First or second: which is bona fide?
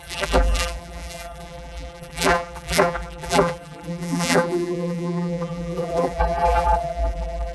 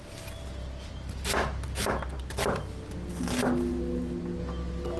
second